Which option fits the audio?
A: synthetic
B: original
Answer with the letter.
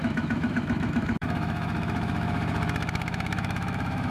A